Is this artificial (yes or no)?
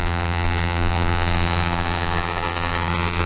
yes